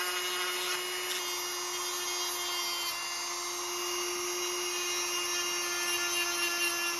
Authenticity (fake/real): real